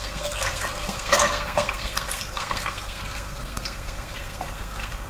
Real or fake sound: fake